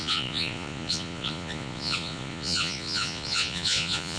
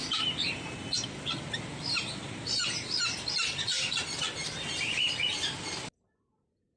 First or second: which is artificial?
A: first